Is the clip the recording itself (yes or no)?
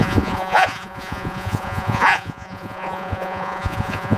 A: no